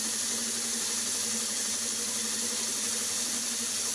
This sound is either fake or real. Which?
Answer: real